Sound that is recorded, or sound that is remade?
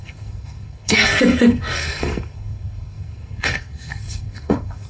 remade